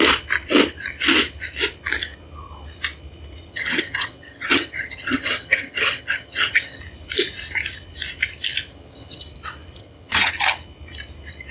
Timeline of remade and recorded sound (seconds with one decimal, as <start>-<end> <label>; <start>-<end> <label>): 0.0-3.5 recorded; 3.5-6.8 remade; 6.8-8.7 recorded; 8.7-9.2 remade; 9.2-9.8 recorded; 9.8-10.3 remade; 10.3-11.5 recorded